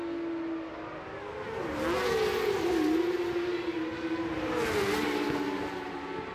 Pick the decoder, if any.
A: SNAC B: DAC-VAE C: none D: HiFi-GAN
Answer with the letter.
C